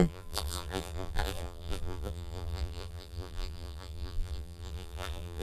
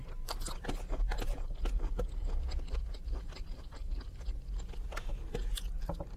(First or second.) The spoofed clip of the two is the first